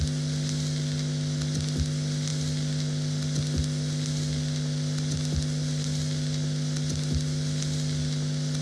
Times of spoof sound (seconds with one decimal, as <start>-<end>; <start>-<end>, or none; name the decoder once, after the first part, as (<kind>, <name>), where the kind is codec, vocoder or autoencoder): none